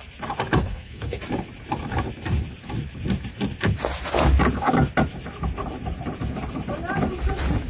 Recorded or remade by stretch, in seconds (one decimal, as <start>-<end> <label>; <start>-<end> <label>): 0.0-0.6 recorded; 0.6-1.2 remade; 1.2-7.7 recorded